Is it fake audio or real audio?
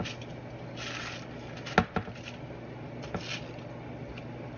real